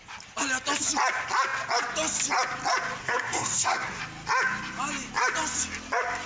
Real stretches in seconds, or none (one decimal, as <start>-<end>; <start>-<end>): 0.0-3.0; 4.0-6.3